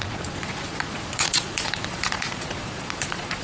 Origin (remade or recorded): remade